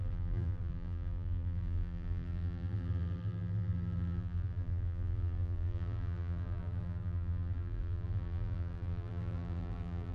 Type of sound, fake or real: fake